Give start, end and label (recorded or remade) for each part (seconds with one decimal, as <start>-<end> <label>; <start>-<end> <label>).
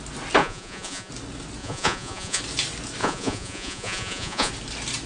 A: 0.0-0.4 recorded; 0.4-1.1 remade; 1.1-1.6 recorded; 1.6-2.4 remade; 2.4-3.0 recorded; 3.0-4.5 remade; 4.5-5.1 recorded